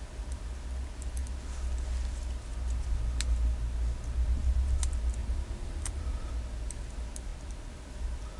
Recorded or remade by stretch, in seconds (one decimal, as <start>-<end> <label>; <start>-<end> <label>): 0.0-5.2 recorded; 5.2-6.3 remade; 6.3-8.4 recorded